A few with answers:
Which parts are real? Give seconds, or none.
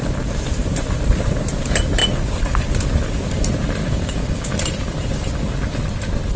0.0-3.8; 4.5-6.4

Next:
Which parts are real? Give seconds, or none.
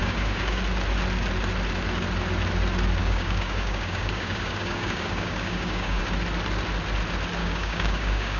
0.6-3.0; 6.0-7.4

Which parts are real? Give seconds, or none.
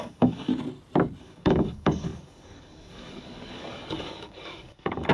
0.5-1.2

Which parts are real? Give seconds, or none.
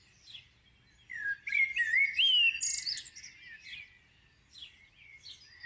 0.0-5.7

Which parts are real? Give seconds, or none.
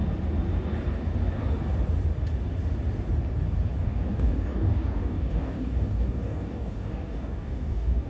0.0-3.8